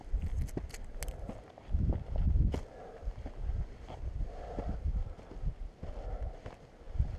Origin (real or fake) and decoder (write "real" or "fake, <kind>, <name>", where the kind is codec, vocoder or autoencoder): real